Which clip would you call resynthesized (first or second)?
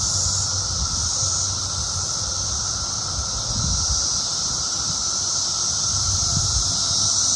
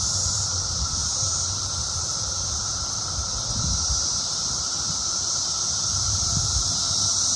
second